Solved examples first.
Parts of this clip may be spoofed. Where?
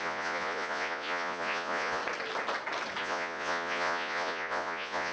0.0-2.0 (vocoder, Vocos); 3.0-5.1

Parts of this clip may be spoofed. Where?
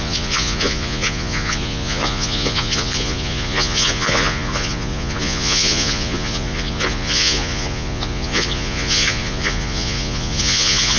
0.0-11.0 (vocoder, Vocos)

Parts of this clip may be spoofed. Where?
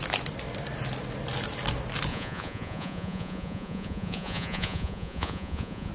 2.1-5.9 (vocoder, Vocos)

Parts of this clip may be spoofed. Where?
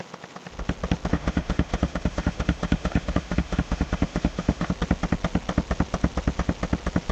1.1-4.7 (autoencoder, DAC-VAE)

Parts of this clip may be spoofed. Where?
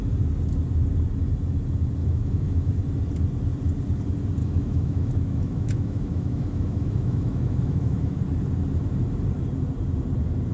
2.0-2.7 (autoencoder, DAC-VAE); 4.4-8.2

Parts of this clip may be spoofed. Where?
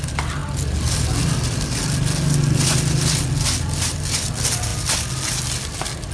none